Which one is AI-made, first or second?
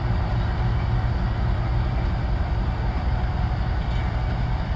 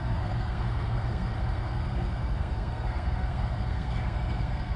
second